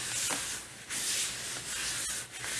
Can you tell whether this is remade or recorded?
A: recorded